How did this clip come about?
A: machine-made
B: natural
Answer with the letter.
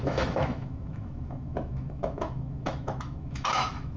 A